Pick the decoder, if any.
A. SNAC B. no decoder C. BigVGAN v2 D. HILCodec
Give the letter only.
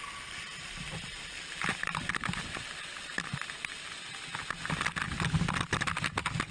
B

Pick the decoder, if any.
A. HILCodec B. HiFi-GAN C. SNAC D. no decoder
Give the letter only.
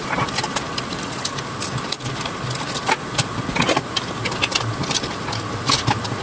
D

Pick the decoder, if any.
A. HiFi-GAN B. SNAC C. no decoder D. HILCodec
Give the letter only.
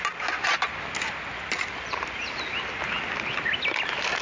C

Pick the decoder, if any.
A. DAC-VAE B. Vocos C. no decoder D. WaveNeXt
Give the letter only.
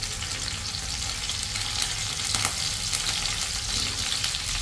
C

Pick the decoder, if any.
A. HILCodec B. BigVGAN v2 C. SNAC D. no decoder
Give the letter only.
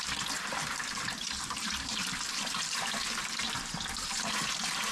B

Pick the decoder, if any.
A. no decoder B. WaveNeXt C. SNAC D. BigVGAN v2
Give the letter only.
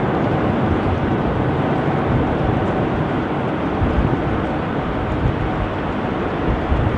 D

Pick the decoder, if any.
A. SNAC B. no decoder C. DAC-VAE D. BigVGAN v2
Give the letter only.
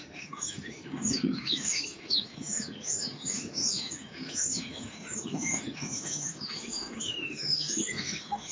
C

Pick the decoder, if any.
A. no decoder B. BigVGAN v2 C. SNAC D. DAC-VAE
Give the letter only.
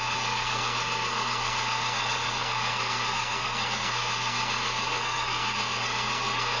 C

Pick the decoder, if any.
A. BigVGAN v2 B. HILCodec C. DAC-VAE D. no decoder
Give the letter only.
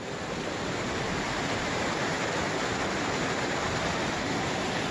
A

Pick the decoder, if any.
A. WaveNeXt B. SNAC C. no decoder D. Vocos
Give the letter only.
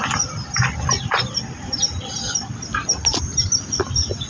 C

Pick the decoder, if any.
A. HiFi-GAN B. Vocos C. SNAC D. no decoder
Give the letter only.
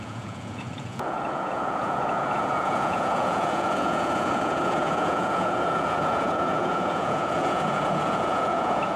B